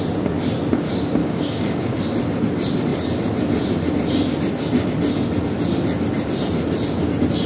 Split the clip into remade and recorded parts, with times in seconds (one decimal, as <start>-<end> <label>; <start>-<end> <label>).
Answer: 0.0-1.2 recorded; 1.2-2.0 remade; 2.0-7.5 recorded